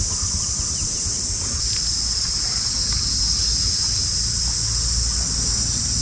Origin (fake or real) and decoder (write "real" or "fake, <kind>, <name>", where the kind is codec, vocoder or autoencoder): real